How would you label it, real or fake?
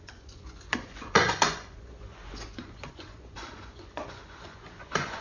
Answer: fake